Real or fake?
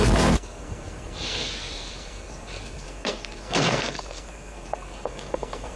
fake